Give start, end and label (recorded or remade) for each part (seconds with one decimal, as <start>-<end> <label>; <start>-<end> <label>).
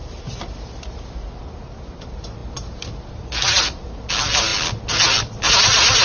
0.0-6.0 recorded